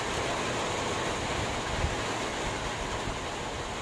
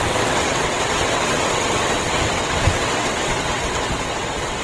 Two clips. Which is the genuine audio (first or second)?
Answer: first